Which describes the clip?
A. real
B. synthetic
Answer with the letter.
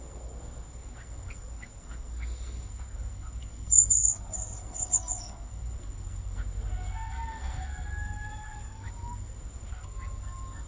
B